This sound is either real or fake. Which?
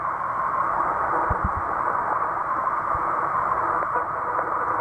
real